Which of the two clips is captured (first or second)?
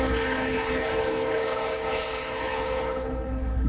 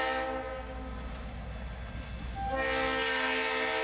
second